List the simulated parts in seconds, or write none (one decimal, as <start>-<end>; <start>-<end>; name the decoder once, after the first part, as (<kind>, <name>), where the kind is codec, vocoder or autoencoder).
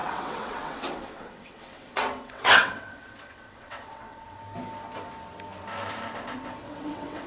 0.0-4.4 (vocoder, WaveNeXt); 6.6-7.3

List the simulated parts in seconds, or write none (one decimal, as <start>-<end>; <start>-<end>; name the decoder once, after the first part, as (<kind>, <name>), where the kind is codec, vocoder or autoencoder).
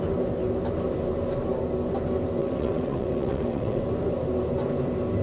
2.4-3.8 (vocoder, WaveNeXt)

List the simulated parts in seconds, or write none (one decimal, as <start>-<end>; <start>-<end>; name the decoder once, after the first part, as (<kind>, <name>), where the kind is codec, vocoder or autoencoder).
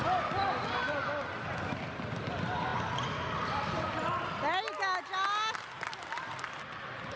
none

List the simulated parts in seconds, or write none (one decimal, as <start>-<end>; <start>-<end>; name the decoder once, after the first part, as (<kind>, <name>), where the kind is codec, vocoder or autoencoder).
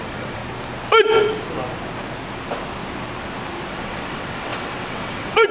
0.0-0.4 (vocoder, WaveNeXt); 3.7-5.5